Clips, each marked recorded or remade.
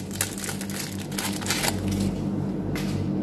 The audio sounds recorded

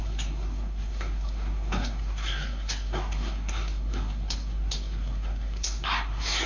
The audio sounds remade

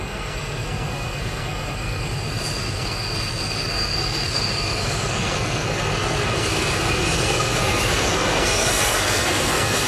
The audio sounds remade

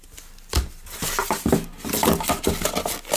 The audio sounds recorded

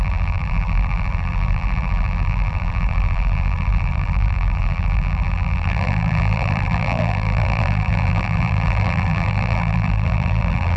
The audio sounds remade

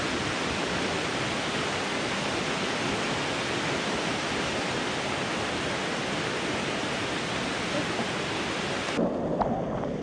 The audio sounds recorded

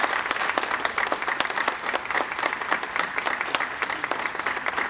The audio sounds recorded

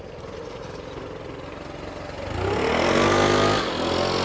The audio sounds recorded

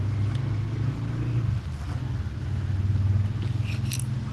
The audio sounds recorded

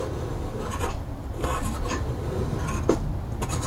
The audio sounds recorded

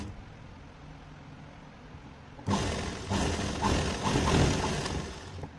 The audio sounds recorded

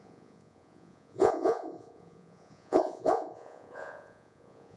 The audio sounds remade